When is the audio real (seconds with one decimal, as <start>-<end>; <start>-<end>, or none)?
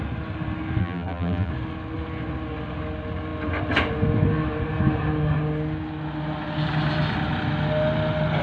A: 0.0-0.8; 1.5-8.4